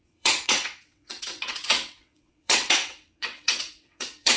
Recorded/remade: remade